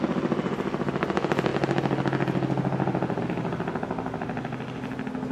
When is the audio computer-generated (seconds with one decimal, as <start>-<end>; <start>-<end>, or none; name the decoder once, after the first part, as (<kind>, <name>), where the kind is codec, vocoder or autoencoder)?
none